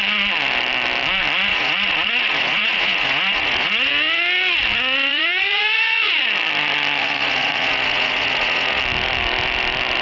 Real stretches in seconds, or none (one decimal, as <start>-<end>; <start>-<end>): 0.0-1.5; 3.9-5.1; 6.1-7.0; 8.8-10.0